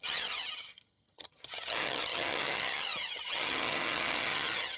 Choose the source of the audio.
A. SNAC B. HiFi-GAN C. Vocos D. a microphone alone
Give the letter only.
B